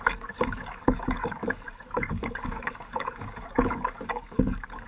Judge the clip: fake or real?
fake